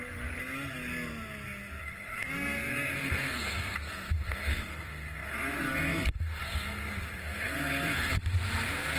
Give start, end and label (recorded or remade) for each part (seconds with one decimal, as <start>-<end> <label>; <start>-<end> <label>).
0.0-0.4 remade; 0.4-1.8 recorded; 1.8-8.1 remade; 8.1-9.0 recorded